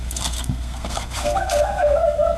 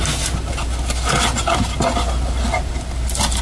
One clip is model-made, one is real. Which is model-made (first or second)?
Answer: first